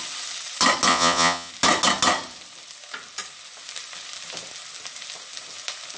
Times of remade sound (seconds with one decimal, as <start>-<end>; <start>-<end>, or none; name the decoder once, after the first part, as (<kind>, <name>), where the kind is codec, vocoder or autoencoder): 0.9-1.5 (vocoder, Vocos)